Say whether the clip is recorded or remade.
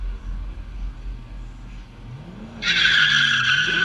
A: recorded